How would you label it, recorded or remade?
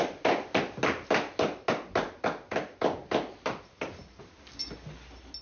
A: recorded